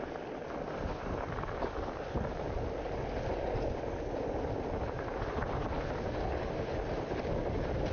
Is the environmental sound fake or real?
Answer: real